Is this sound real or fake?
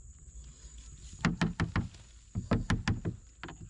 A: real